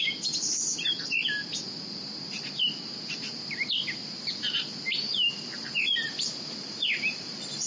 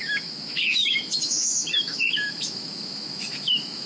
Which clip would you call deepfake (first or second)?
second